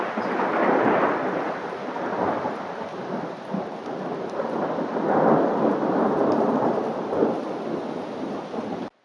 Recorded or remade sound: recorded